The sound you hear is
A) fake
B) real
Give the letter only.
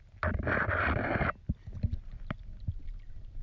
B